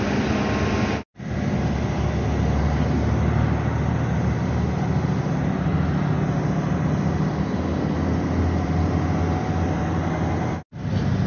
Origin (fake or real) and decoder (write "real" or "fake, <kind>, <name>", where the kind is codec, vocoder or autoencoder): real